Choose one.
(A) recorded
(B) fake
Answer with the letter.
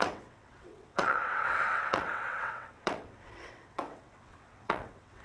B